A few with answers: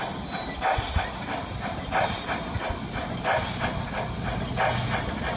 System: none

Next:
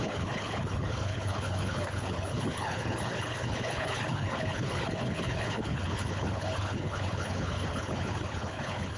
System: codec, HILCodec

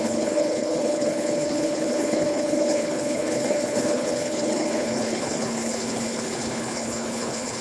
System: codec, HILCodec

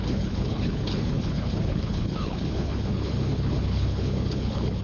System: codec, HILCodec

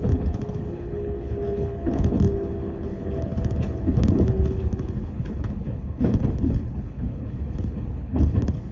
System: codec, HILCodec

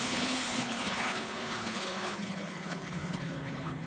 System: codec, HILCodec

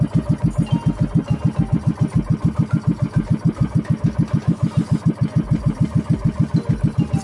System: none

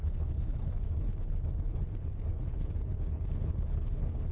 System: codec, HILCodec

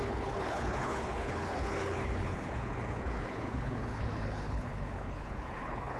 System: codec, HILCodec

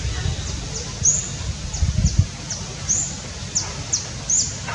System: none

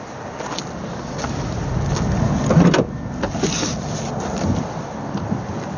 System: none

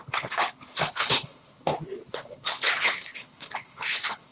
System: codec, HILCodec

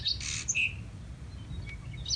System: none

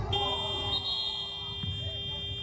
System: none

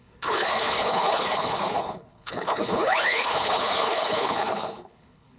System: codec, HILCodec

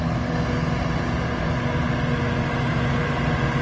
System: none